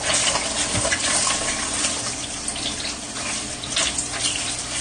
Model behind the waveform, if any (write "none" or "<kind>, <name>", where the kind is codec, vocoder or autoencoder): vocoder, BigVGAN v2